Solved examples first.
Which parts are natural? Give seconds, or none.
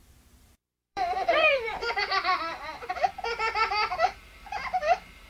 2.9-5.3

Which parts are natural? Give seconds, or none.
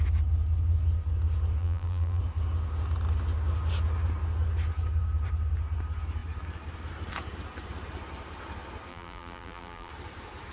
0.0-1.6; 2.2-8.9; 9.9-10.5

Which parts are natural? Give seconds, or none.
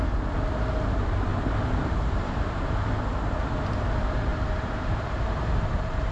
0.0-1.3; 2.8-4.3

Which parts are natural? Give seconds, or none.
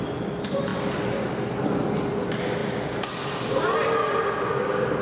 0.0-5.0